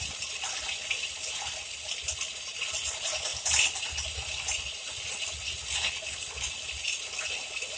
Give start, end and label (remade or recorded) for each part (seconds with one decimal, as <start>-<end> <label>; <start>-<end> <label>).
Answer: 0.0-3.3 remade; 3.3-7.3 recorded; 7.3-7.8 remade